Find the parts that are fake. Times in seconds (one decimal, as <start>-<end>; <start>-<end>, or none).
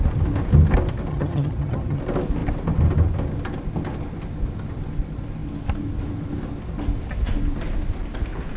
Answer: 1.1-2.0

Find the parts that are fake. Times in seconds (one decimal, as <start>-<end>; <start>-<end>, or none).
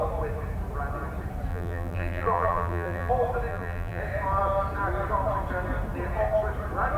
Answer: 1.5-3.1; 3.5-4.0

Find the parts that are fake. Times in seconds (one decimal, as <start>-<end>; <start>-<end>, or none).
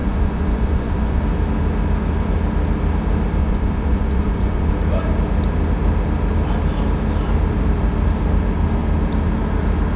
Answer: 0.0-1.2; 3.4-4.7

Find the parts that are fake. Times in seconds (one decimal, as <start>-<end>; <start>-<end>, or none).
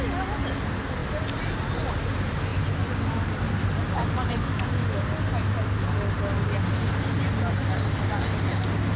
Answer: none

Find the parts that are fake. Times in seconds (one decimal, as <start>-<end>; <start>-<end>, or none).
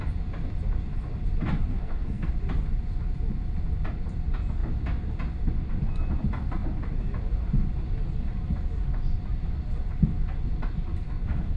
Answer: 1.7-2.3; 11.0-11.6